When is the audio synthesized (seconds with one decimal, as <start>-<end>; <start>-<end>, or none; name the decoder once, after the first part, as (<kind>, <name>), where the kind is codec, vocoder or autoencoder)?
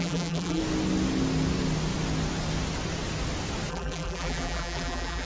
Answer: 0.0-0.6 (vocoder, BigVGAN v2); 3.7-5.2